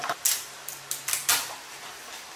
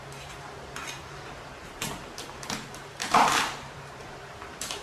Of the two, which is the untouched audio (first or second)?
first